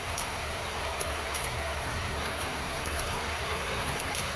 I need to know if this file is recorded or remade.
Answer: remade